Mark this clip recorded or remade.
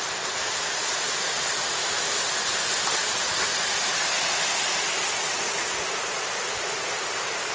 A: remade